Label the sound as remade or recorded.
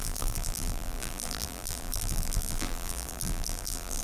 remade